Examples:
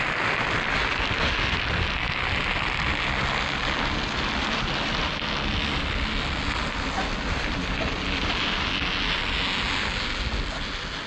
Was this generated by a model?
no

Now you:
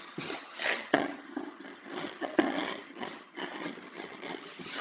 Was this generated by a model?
yes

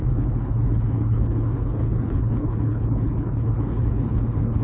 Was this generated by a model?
yes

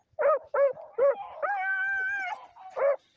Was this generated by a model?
no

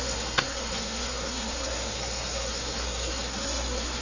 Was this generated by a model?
yes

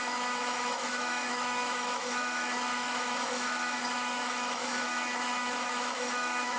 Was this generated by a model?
yes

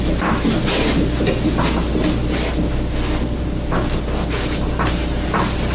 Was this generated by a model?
no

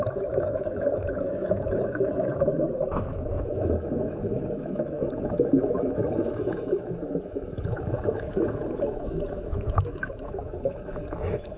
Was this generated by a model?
yes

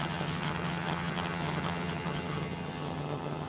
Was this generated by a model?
yes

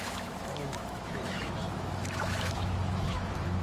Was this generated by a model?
yes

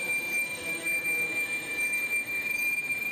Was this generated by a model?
yes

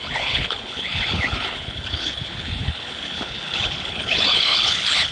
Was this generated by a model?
yes